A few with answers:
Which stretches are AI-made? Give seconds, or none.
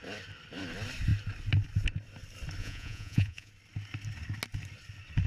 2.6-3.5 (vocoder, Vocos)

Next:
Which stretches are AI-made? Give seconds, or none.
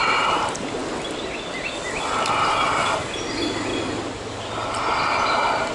none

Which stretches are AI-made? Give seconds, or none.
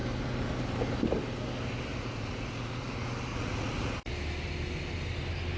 1.9-2.9 (vocoder, Vocos); 3.3-4.1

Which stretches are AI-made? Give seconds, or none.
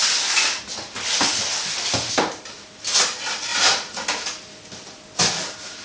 3.5-5.2 (vocoder, BigVGAN v2)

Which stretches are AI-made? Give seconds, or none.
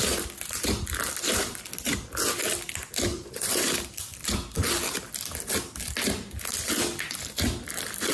3.1-3.7 (vocoder, Vocos)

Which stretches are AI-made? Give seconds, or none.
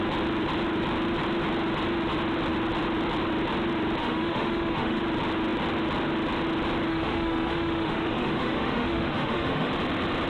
4.0-5.0 (autoencoder, DAC-VAE); 6.9-9.7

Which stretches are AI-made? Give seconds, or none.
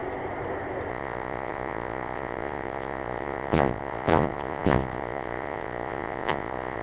0.9-6.8 (vocoder, Vocos)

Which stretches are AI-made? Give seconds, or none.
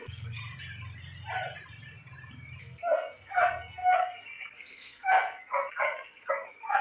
0.0-0.4 (codec, SNAC); 2.6-6.8